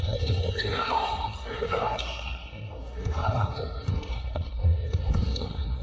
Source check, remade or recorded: remade